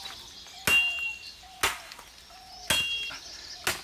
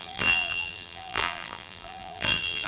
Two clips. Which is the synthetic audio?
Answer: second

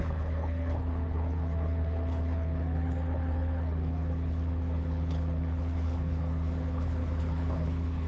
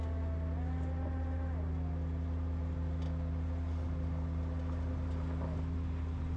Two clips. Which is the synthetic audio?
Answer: first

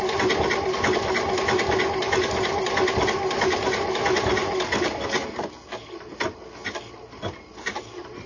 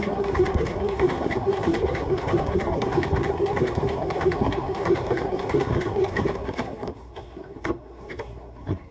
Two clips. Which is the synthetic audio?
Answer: second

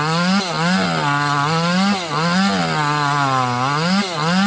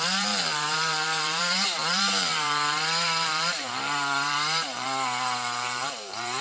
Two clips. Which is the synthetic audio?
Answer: second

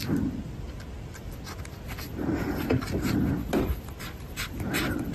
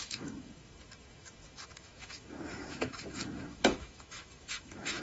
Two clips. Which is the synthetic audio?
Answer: second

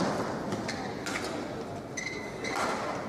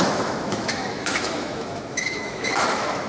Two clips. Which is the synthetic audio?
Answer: second